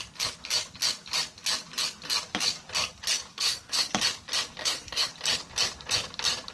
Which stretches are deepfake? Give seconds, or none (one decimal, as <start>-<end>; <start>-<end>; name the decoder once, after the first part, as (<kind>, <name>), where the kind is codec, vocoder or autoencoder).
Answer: 3.3-3.9 (codec, SNAC); 4.6-5.1